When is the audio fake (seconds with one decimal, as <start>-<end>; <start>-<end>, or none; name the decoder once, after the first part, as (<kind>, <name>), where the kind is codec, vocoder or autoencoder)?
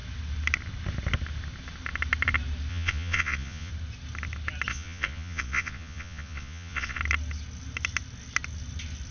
2.7-3.7 (vocoder, Vocos); 4.7-7.0